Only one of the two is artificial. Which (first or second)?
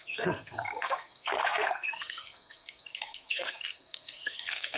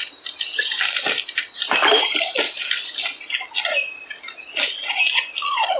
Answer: first